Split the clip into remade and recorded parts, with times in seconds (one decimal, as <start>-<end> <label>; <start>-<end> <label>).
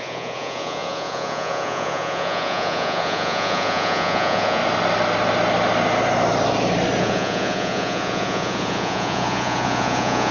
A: 0.0-4.6 remade; 4.6-7.0 recorded; 7.0-10.3 remade